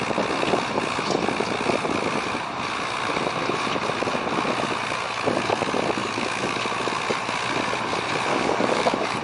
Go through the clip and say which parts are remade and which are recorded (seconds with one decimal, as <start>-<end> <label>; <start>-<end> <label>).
0.0-6.0 recorded; 6.0-6.6 remade; 6.6-8.3 recorded; 8.3-9.2 remade